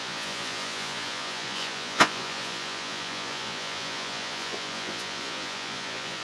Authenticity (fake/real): fake